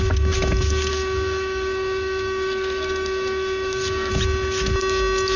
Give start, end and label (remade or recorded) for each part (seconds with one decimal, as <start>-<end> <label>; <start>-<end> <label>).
0.0-0.9 recorded; 0.9-4.1 remade; 4.1-5.4 recorded